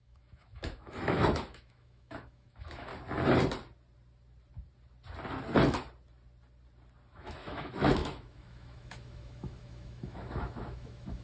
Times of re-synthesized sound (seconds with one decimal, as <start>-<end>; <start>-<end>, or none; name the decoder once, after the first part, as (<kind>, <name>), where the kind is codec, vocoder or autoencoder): 0.0-2.9 (autoencoder, DAC-VAE); 7.1-11.2